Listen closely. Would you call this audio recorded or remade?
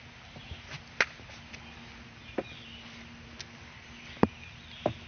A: recorded